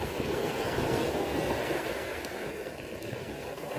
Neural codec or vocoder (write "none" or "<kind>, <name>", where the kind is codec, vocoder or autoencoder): codec, SNAC